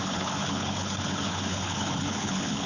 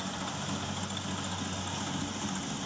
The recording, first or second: second